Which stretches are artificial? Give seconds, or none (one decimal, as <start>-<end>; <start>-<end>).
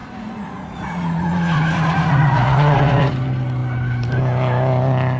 0.0-3.1